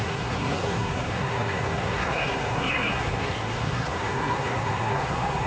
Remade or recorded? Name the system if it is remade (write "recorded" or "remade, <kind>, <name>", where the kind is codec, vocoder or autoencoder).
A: remade, codec, SNAC